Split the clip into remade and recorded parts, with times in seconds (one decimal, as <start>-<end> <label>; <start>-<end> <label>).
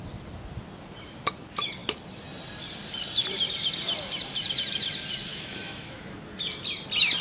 0.0-5.3 recorded; 5.3-6.3 remade; 6.3-7.2 recorded